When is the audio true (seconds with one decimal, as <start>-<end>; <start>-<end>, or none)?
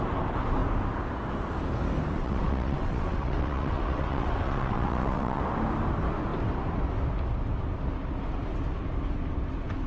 0.0-2.2; 5.4-9.9